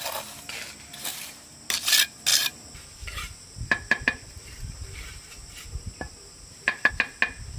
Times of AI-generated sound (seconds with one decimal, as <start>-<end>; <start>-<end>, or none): 1.1-1.6; 2.3-6.9